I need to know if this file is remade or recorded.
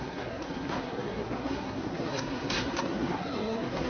remade